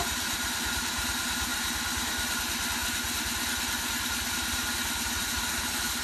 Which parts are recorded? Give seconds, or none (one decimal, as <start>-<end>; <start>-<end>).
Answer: none